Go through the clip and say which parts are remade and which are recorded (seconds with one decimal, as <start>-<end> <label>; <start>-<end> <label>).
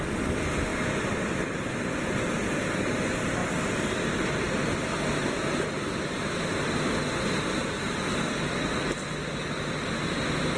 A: 0.0-10.6 recorded